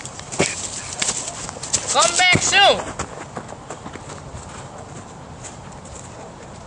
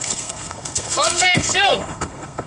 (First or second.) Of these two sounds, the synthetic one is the second